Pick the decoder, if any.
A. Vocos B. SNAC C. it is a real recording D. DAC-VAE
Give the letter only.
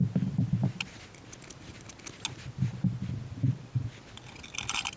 C